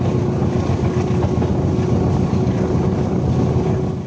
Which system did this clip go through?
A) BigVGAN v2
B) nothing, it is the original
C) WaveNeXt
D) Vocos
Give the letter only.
B